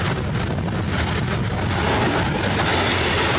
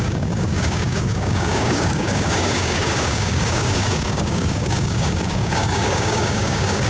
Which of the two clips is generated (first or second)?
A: second